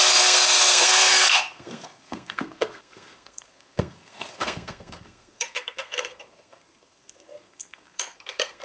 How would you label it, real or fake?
fake